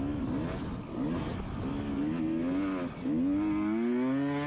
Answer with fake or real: real